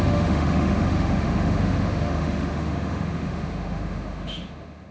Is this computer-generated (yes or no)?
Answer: yes